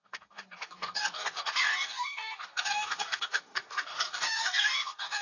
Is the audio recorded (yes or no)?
no